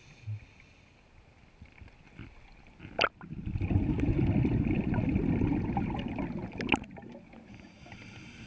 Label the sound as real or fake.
real